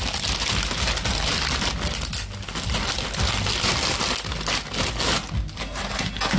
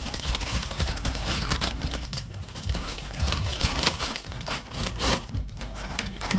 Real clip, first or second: first